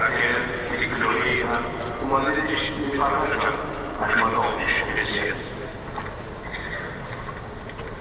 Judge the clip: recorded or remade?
recorded